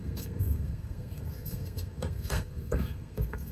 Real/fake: fake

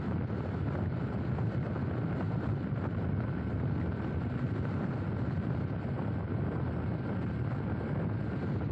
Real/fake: real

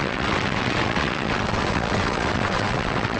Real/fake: fake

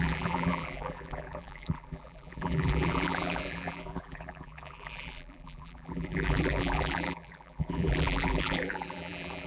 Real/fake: fake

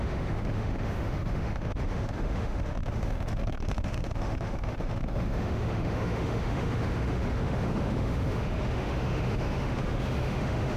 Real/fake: fake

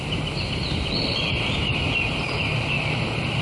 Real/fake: real